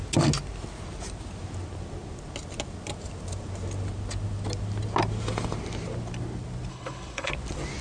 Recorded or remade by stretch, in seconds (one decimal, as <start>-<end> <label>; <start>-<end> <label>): 0.0-6.7 recorded; 6.7-7.3 remade; 7.3-7.8 recorded